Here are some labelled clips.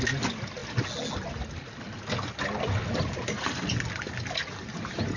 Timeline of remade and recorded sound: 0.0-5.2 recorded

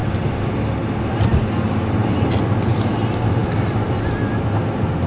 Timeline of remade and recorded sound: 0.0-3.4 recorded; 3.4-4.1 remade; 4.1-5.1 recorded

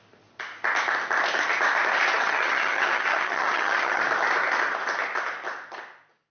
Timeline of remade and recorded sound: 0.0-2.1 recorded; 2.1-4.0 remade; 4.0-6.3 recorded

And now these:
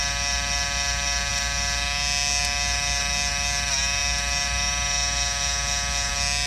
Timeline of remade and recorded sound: 0.0-6.5 recorded

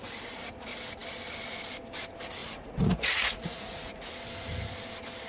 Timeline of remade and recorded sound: 0.0-2.4 recorded; 2.4-4.1 remade; 4.1-5.3 recorded